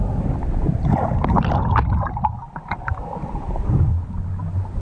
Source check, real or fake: real